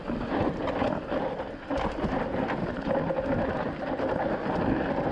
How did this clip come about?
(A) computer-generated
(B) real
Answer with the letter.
B